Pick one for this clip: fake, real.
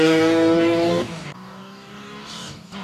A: fake